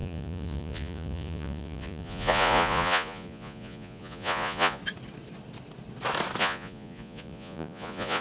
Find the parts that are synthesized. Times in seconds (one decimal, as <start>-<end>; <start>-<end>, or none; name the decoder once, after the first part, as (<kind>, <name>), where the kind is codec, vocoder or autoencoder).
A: 0.0-4.8 (vocoder, Vocos); 6.4-8.2